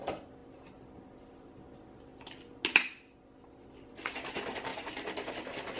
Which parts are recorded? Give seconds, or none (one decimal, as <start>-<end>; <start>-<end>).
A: 0.0-5.8